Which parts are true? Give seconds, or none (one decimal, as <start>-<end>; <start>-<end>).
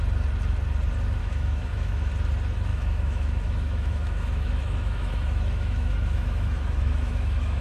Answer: 0.0-1.2; 2.1-2.7